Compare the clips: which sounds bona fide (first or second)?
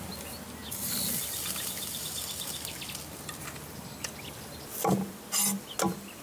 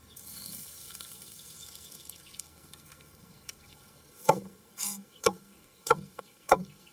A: first